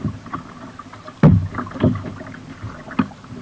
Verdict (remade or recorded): recorded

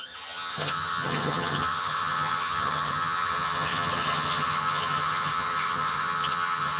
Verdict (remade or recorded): remade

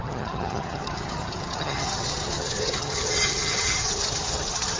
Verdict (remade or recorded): remade